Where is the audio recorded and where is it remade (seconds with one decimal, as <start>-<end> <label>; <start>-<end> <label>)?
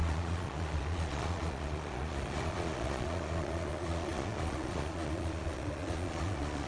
0.0-6.7 remade